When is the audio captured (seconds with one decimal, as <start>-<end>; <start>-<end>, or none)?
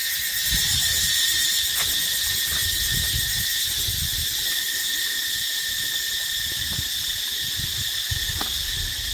0.0-9.1